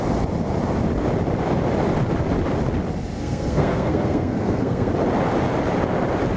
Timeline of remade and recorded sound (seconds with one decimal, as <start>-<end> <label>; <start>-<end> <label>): 0.0-3.2 recorded; 3.2-4.9 remade; 4.9-6.4 recorded